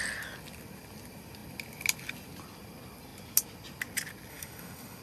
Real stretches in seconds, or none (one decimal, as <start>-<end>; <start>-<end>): 0.0-4.3